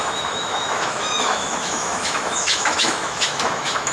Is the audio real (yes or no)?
no